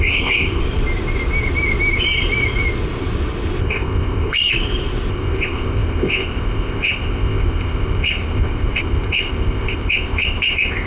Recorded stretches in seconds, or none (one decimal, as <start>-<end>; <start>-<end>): 0.6-3.6; 4.5-5.1